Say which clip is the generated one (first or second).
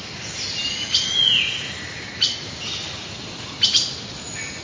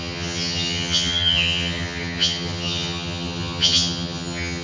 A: second